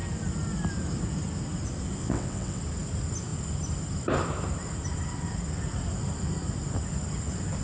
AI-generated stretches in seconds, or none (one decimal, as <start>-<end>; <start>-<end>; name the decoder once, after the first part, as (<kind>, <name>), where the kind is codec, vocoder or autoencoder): 2.0-2.6 (vocoder, WaveNeXt)